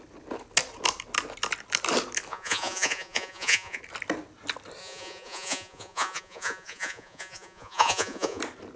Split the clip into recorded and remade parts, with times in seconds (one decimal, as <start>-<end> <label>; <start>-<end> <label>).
0.0-2.3 recorded; 2.3-3.8 remade; 3.8-4.8 recorded; 4.8-8.4 remade; 8.4-8.8 recorded